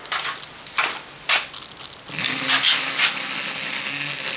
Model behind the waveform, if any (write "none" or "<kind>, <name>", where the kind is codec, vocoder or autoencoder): none